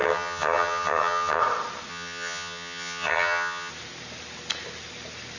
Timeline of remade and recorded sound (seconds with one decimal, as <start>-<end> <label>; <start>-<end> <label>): 0.0-1.4 remade; 1.4-1.9 recorded; 1.9-3.7 remade; 3.7-5.4 recorded